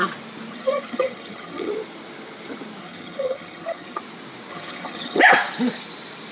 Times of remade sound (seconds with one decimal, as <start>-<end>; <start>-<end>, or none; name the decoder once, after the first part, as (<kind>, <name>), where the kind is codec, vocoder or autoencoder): 0.5-1.7 (vocoder, HiFi-GAN); 2.8-4.0; 4.5-5.2